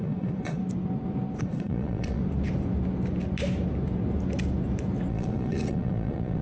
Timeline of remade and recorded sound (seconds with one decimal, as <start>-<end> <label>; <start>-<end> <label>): 0.0-0.6 remade; 0.6-1.4 recorded; 1.4-2.2 remade; 2.2-5.1 recorded; 5.1-6.4 remade